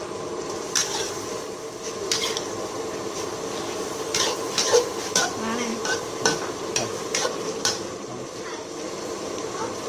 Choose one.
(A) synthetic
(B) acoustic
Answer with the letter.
A